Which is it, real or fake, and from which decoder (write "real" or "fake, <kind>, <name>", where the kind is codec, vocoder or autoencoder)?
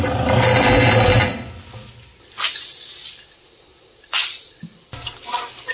real